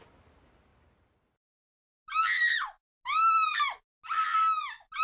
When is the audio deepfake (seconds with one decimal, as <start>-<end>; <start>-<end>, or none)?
none